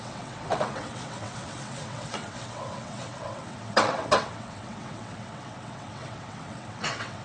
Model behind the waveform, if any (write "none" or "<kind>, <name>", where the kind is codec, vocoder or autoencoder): vocoder, WaveNeXt